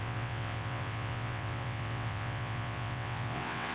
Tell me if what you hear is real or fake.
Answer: fake